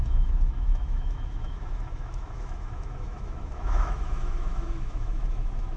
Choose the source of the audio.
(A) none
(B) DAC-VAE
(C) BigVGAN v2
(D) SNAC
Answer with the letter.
B